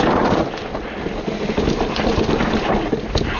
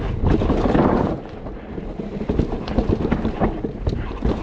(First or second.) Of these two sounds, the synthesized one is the second